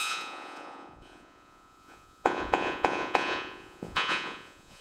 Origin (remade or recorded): remade